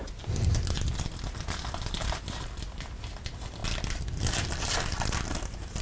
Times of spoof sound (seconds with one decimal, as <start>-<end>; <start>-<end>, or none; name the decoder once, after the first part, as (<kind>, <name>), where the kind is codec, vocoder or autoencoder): none